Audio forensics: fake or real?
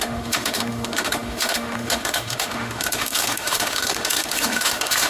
fake